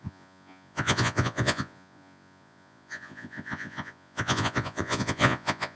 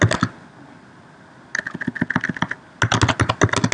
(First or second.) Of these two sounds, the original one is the second